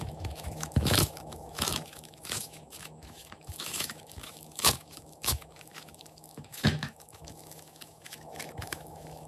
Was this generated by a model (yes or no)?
yes